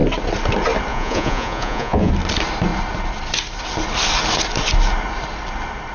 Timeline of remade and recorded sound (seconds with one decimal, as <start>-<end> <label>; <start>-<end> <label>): 0.0-0.9 recorded; 0.9-2.1 remade; 2.1-5.9 recorded